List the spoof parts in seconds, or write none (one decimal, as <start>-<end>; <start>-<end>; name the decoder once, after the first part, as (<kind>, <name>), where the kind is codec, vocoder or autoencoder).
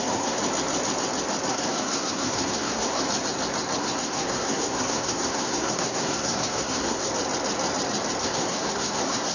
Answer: 0.0-0.4 (codec, SNAC); 1.5-3.0; 3.8-7.1; 8.2-9.3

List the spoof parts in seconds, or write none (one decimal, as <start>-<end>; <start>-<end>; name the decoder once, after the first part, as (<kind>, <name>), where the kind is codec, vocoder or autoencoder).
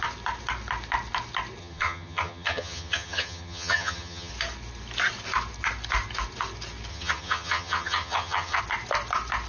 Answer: 1.6-4.3 (vocoder, HiFi-GAN); 6.9-8.6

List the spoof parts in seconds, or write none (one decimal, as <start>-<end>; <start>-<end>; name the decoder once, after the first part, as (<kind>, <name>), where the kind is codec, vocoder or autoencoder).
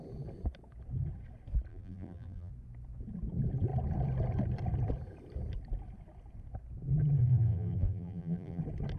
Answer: 1.7-2.5 (vocoder, BigVGAN v2); 7.2-8.6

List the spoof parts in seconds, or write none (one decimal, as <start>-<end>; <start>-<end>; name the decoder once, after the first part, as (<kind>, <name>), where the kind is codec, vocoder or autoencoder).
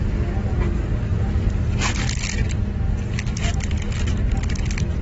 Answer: none